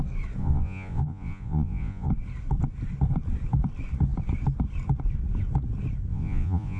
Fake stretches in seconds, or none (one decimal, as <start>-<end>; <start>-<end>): 0.4-2.1; 6.1-6.8